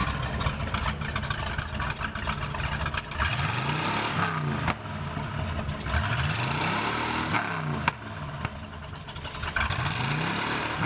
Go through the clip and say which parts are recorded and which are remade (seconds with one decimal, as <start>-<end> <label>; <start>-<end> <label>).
0.0-10.9 recorded